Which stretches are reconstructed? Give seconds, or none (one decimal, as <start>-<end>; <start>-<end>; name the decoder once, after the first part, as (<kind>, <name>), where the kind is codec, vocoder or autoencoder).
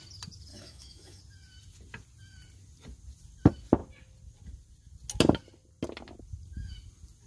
0.5-1.2 (autoencoder, DAC-VAE)